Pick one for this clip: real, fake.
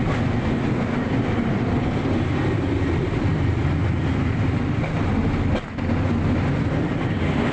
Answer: real